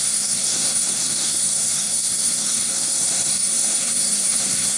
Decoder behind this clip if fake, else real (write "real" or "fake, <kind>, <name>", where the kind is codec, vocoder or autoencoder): fake, codec, SNAC